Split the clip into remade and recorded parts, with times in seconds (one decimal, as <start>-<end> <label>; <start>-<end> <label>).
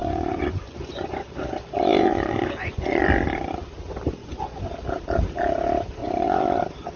0.0-3.0 remade; 3.0-4.2 recorded; 4.2-4.7 remade; 4.7-6.0 recorded; 6.0-6.6 remade; 6.6-7.0 recorded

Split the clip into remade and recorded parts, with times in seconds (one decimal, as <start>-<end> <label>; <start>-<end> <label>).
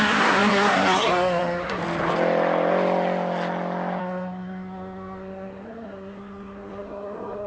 0.0-1.8 remade; 1.8-4.0 recorded; 4.0-7.5 remade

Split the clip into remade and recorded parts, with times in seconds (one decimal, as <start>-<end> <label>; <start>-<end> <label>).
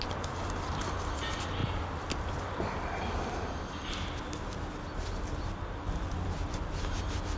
0.0-7.4 recorded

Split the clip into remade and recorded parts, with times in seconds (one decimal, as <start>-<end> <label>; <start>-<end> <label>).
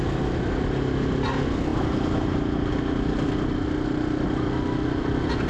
0.0-5.5 recorded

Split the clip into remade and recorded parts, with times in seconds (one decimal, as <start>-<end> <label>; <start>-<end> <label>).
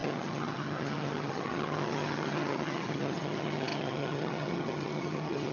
0.0-5.5 remade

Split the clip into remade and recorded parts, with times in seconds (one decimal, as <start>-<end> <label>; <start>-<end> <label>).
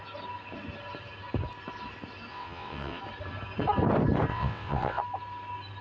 0.0-2.3 recorded; 2.3-3.0 remade; 3.0-4.3 recorded; 4.3-5.0 remade; 5.0-5.8 recorded